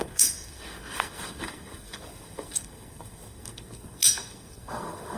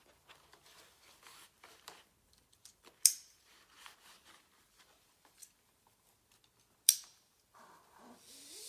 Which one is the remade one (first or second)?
first